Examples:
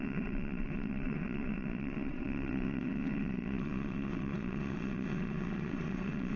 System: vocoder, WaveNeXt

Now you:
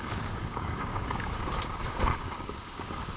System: codec, DAC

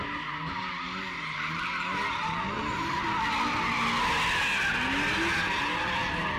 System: none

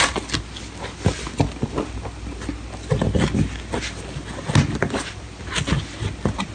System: none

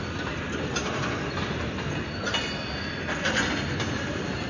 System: none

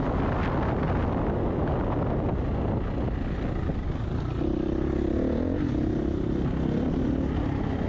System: none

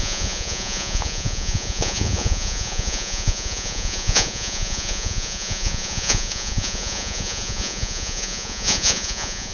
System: vocoder, Vocos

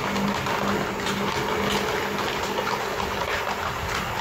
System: none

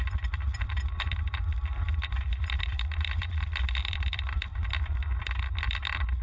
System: vocoder, BigVGAN v2